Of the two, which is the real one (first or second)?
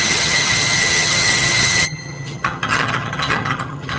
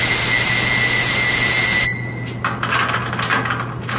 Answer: second